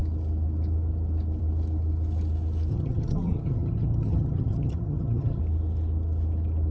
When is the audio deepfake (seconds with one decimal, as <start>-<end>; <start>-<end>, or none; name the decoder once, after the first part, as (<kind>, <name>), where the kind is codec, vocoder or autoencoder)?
2.7-5.4 (vocoder, HiFi-GAN)